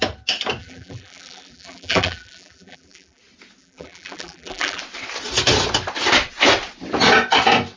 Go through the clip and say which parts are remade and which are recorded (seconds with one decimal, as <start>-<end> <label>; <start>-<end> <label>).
0.0-0.6 recorded; 0.6-3.2 remade; 3.2-3.6 recorded; 3.6-4.8 remade; 4.8-7.8 recorded